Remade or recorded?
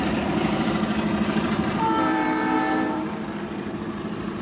remade